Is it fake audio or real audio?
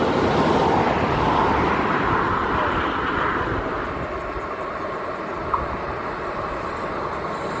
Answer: real